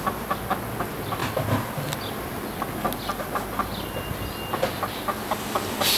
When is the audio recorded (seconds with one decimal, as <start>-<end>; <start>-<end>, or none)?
0.0-6.0